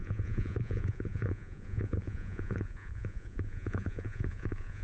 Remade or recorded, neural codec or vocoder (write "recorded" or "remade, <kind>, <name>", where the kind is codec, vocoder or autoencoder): remade, vocoder, Vocos